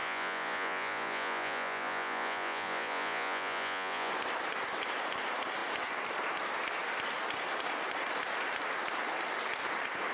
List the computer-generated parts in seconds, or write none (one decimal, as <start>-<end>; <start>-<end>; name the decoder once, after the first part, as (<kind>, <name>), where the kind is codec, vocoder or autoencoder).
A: 0.0-4.1 (vocoder, Vocos)